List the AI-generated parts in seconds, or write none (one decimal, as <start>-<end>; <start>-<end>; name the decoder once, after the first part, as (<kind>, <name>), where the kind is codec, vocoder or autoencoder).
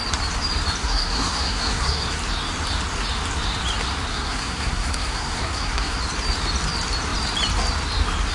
0.8-2.2 (codec, SNAC); 4.1-6.0